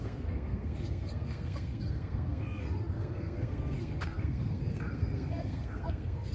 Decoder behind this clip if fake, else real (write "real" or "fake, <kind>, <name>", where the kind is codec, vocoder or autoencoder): fake, codec, SNAC